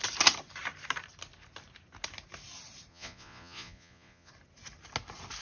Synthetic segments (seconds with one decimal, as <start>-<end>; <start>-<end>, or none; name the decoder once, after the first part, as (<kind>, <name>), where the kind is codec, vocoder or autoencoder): 2.9-4.3 (vocoder, Vocos)